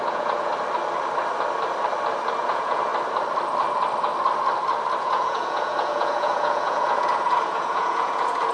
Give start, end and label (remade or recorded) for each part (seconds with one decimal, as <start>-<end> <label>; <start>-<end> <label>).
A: 0.0-0.5 remade; 0.5-2.4 recorded; 2.4-2.9 remade; 2.9-5.0 recorded; 5.0-8.5 remade